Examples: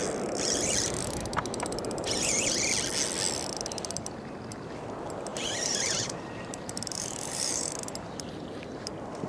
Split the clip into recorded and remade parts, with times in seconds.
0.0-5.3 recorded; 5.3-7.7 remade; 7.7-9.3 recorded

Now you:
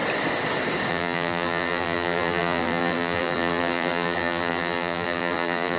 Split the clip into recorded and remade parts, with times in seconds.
0.0-0.9 recorded; 0.9-5.8 remade

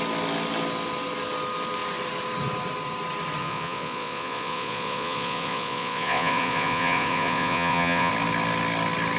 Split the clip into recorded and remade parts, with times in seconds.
0.0-3.4 recorded; 3.4-8.1 remade; 8.1-9.2 recorded

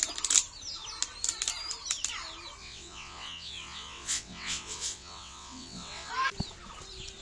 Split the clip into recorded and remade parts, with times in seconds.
0.0-2.6 recorded; 2.6-6.1 remade; 6.1-7.2 recorded

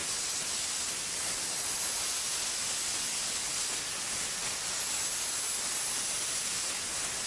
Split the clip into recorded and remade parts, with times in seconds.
0.0-7.3 recorded

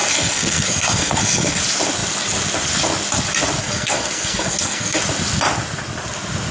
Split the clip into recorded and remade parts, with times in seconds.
0.0-1.6 remade; 1.6-3.6 recorded; 3.6-5.0 remade; 5.0-6.5 recorded

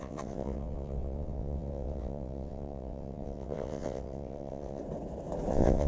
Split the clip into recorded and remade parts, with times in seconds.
0.0-4.8 remade; 4.8-5.5 recorded; 5.5-5.9 remade

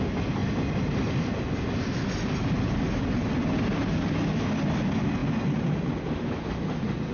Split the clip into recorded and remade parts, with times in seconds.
0.0-7.1 recorded